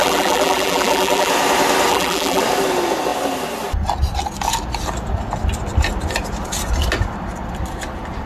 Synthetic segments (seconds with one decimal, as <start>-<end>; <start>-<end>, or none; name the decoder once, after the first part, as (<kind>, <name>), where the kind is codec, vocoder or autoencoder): 0.0-1.3 (vocoder, BigVGAN v2); 1.9-2.4

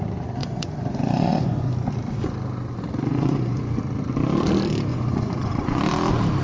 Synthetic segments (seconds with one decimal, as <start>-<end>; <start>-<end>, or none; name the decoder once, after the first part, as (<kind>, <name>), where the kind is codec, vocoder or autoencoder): 0.4-1.7 (vocoder, Vocos); 3.1-3.6; 4.9-5.8

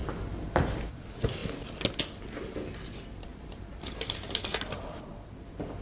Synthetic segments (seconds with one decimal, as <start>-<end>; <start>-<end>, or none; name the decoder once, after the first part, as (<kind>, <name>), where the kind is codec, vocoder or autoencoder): 0.0-1.0 (vocoder, BigVGAN v2); 3.3-4.4

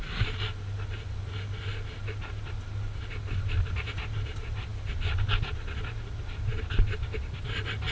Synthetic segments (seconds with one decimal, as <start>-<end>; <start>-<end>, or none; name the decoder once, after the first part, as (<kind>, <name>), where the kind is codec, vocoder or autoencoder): none

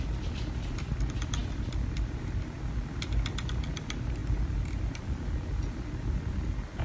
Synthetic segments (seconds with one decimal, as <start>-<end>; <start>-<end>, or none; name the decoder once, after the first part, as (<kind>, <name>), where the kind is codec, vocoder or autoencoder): none

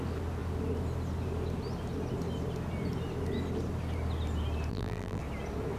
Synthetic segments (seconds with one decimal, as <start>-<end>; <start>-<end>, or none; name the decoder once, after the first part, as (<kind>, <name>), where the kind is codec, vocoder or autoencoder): 4.7-5.2 (vocoder, BigVGAN v2)

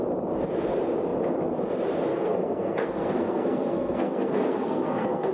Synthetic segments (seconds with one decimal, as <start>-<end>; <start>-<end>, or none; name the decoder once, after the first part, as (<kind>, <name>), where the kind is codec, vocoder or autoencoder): 2.1-5.3 (codec, SNAC)